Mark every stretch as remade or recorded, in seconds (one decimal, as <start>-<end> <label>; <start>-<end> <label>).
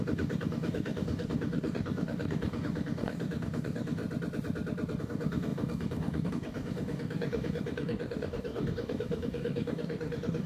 0.0-4.0 remade; 4.0-5.0 recorded; 5.0-10.5 remade